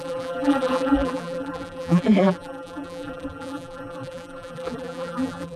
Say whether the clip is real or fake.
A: fake